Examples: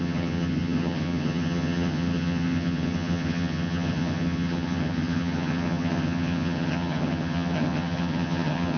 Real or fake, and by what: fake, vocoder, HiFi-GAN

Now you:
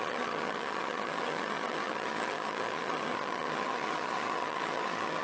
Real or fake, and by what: fake, vocoder, HiFi-GAN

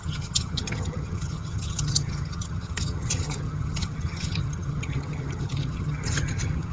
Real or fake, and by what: fake, vocoder, HiFi-GAN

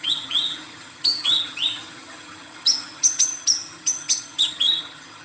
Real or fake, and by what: fake, vocoder, HiFi-GAN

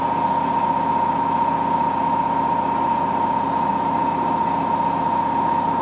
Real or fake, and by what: real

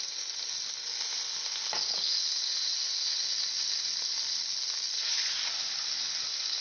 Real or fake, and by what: real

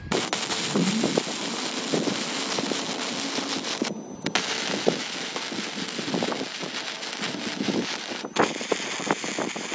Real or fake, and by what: real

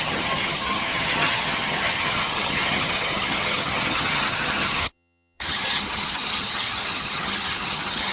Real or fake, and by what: fake, vocoder, HiFi-GAN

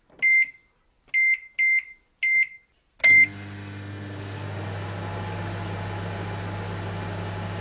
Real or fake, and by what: real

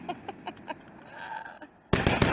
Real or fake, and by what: real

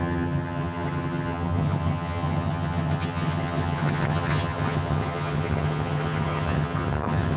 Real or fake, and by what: fake, vocoder, HiFi-GAN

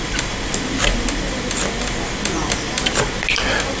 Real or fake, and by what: real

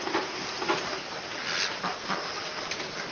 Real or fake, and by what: real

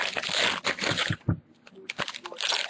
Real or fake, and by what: real